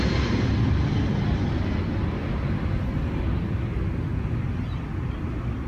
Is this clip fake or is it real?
real